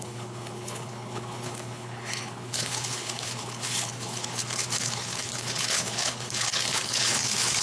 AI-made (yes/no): yes